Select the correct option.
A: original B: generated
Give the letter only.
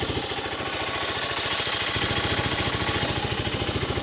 A